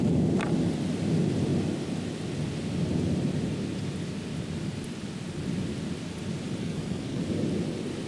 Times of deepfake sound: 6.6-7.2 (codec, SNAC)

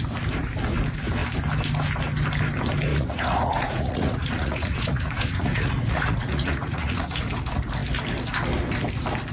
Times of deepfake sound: 2.9-7.3 (vocoder, Vocos)

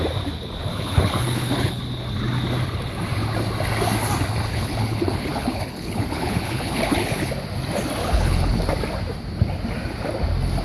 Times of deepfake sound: 0.7-1.8 (codec, HILCodec); 4.5-7.3; 8.0-8.6

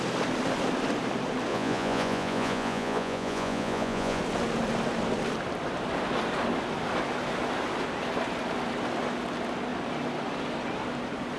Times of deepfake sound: 1.5-4.2 (vocoder, Vocos)

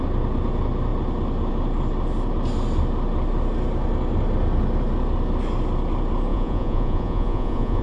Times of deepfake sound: 6.3-7.8 (vocoder, Vocos)

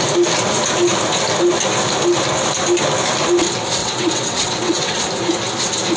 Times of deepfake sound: 3.8-5.0 (vocoder, WaveNeXt)

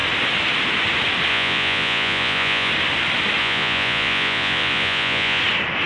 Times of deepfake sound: 1.3-2.7 (vocoder, Vocos); 3.4-5.4

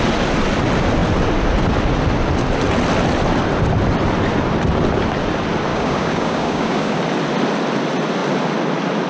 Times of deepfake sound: 5.7-7.0 (codec, DAC)